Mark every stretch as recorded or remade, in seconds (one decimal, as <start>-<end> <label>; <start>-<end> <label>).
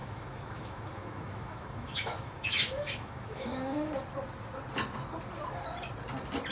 0.0-3.9 remade; 3.9-6.5 recorded